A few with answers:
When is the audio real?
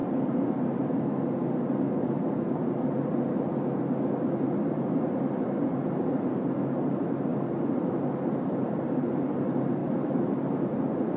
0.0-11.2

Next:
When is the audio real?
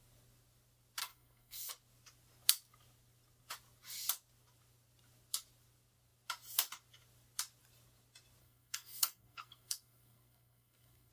0.0-1.0; 1.7-8.4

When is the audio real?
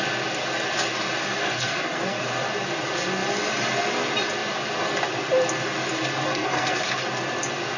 0.0-1.3; 2.2-6.3; 6.8-7.8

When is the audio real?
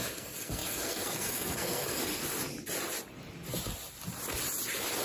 2.0-5.0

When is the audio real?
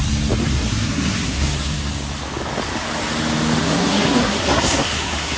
0.0-0.4; 1.9-3.6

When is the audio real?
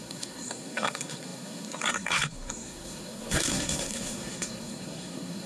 none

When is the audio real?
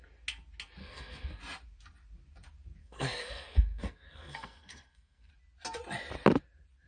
0.0-0.8; 1.4-2.8; 5.3-6.9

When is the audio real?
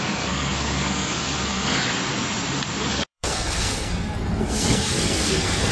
1.8-2.9